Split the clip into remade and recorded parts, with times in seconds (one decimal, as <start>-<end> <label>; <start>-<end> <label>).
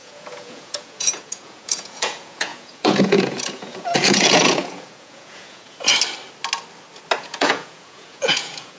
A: 0.0-5.9 remade; 5.9-7.2 recorded; 7.2-8.8 remade